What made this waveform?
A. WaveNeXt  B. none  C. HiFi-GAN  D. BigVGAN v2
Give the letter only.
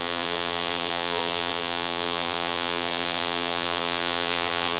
D